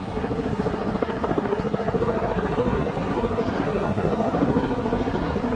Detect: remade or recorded remade